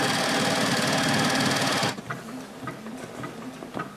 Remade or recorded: recorded